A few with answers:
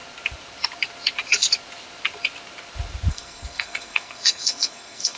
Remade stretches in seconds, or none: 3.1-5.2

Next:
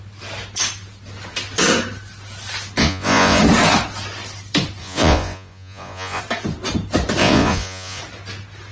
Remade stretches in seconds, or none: 2.8-3.4; 4.8-6.2; 7.2-8.0